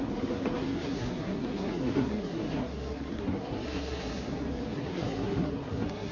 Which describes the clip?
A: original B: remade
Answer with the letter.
B